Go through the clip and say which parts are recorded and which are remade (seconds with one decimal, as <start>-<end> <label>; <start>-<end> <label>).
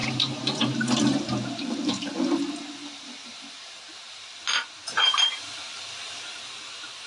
0.0-6.0 remade; 6.0-6.6 recorded; 6.6-7.1 remade